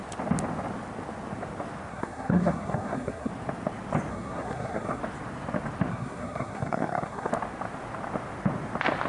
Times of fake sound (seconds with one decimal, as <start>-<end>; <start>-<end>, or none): 1.9-3.3; 4.1-5.0; 5.9-7.3

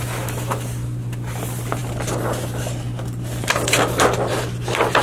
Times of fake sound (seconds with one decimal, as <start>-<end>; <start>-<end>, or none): none

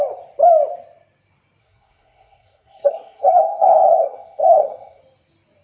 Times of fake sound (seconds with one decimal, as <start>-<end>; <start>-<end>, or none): 1.6-5.0